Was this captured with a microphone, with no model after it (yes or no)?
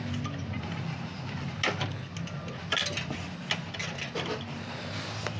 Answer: yes